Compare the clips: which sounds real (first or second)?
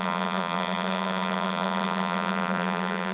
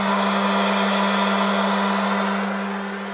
second